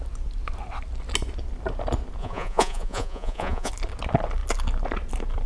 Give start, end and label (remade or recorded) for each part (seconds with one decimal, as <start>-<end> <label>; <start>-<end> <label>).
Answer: 0.0-2.2 recorded; 2.2-3.7 remade; 3.7-5.5 recorded